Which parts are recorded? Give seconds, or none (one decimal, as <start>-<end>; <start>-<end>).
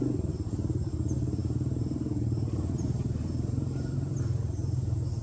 none